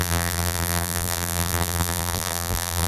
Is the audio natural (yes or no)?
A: no